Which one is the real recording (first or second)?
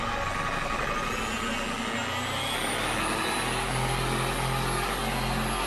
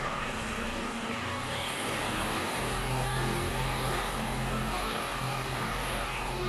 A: first